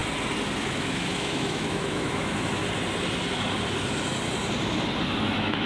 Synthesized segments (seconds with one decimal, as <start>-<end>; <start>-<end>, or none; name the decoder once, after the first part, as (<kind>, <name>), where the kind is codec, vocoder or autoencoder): 0.6-2.6 (autoencoder, DAC-VAE); 5.2-5.7